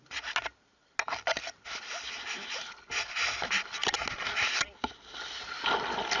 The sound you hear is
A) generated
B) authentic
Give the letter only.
B